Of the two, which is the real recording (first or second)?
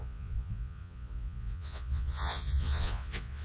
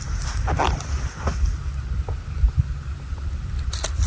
second